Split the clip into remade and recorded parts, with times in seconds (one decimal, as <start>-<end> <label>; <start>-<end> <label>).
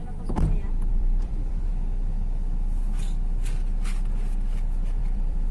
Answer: 0.0-0.9 recorded; 0.9-1.7 remade; 1.7-5.0 recorded; 5.0-5.5 remade